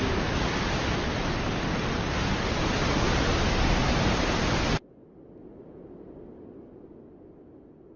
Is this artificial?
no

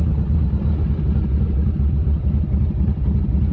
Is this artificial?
no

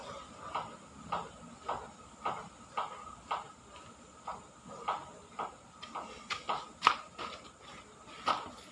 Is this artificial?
no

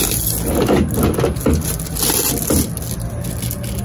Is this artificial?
no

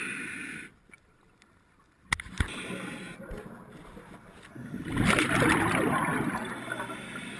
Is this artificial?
no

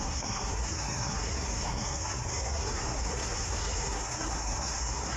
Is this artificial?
yes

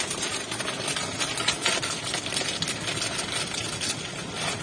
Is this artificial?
no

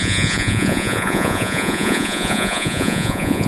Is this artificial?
yes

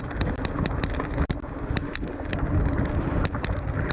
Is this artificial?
no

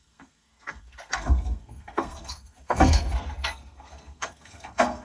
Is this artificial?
yes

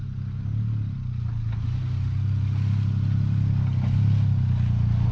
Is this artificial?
no